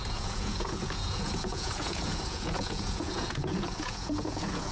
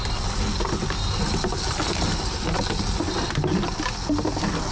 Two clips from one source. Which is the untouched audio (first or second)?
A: second